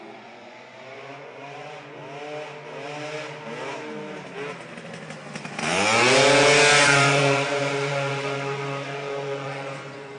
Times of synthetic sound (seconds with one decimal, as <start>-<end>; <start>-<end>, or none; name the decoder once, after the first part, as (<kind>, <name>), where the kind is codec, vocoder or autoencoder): 0.0-2.0 (vocoder, Vocos); 6.8-10.2